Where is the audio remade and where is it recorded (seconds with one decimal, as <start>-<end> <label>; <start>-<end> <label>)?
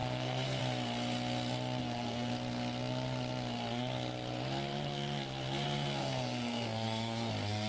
0.0-0.6 remade; 0.6-1.8 recorded; 1.8-2.3 remade; 2.3-6.0 recorded; 6.0-7.3 remade; 7.3-7.7 recorded